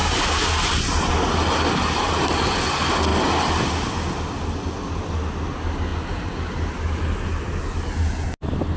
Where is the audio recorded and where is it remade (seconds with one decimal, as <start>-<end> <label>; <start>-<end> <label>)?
0.0-8.8 recorded